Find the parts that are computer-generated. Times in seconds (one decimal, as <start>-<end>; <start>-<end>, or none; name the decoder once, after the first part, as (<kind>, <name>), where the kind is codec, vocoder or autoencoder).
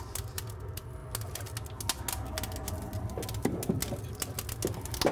none